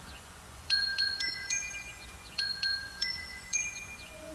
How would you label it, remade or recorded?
remade